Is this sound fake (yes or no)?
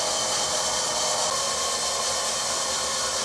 no